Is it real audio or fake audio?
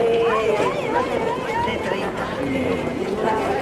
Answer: fake